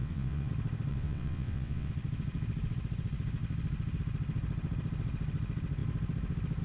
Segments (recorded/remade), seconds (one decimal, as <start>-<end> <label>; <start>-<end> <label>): 0.0-0.5 remade; 0.5-0.9 recorded; 0.9-1.9 remade; 1.9-6.6 recorded